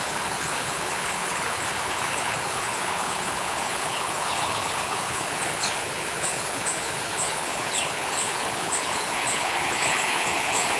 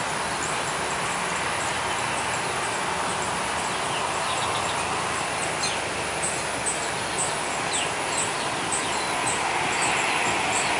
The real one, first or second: second